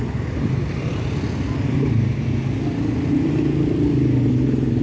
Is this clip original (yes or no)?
yes